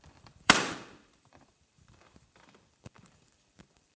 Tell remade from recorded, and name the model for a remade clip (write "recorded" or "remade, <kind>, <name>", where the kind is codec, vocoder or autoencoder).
remade, vocoder, BigVGAN v2